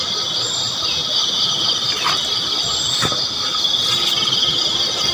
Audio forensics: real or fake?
real